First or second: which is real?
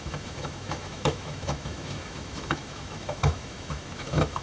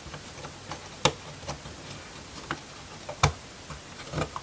second